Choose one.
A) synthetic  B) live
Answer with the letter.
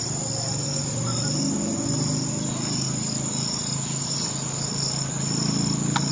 B